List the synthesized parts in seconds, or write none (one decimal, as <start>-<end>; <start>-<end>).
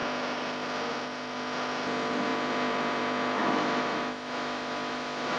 3.4-5.4